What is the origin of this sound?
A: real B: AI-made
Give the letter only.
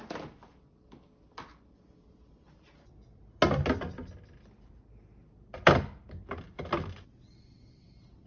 A